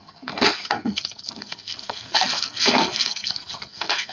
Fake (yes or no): yes